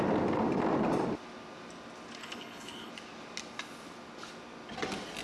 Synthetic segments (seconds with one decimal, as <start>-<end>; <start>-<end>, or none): 2.2-2.9